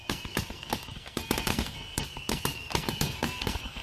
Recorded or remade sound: remade